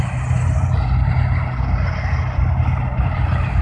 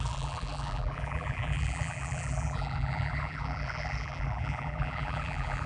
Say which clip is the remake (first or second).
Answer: second